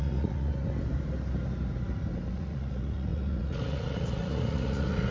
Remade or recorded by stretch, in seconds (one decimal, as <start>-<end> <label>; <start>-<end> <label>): 0.0-0.5 remade; 0.5-2.3 recorded; 2.3-5.1 remade